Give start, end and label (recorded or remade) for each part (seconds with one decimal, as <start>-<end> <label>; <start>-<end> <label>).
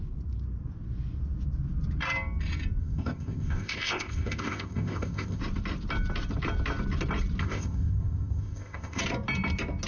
0.0-2.8 recorded; 2.8-5.4 remade; 5.4-7.4 recorded; 7.4-9.0 remade; 9.0-9.9 recorded